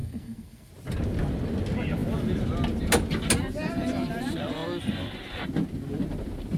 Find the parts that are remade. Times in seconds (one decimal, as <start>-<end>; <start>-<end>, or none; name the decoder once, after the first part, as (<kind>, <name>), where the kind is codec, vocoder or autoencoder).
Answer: 0.0-0.7 (codec, SNAC)